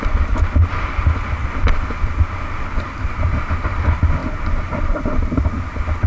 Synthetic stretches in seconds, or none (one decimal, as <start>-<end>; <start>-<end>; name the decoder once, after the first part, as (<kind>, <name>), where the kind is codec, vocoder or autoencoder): 4.2-5.4 (vocoder, BigVGAN v2)